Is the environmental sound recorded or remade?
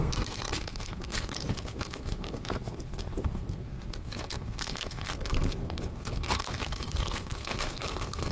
remade